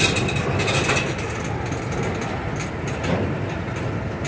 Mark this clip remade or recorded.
recorded